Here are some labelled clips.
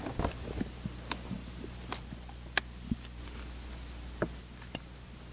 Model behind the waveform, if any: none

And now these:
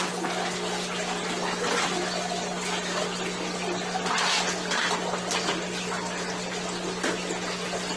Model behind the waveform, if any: none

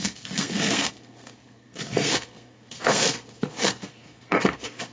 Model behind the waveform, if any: codec, SNAC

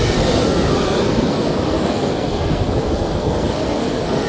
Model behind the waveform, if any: codec, SNAC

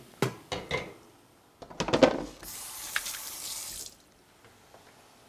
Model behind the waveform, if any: none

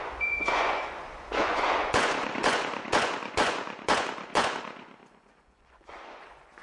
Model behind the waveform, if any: vocoder, Vocos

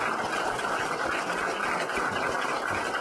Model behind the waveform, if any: none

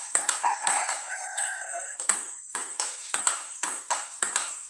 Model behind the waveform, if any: codec, SNAC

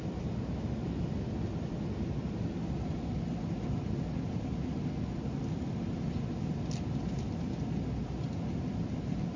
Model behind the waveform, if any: none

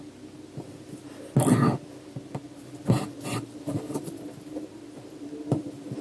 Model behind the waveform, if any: none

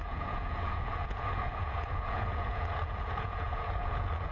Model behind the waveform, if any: vocoder, Vocos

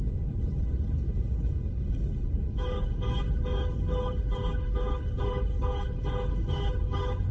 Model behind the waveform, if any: codec, HILCodec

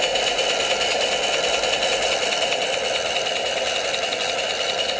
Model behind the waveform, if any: none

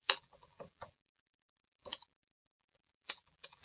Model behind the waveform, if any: vocoder, BigVGAN v2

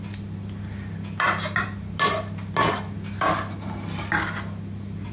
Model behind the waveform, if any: none